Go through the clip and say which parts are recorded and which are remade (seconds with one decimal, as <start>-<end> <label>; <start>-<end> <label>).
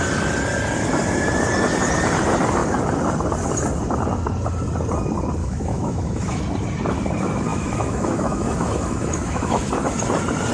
0.0-5.4 recorded; 5.4-6.4 remade; 6.4-7.5 recorded; 7.5-9.7 remade; 9.7-10.5 recorded